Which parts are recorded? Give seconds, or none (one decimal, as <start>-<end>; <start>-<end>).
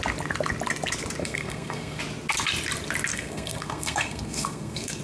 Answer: 0.0-1.2; 2.0-3.1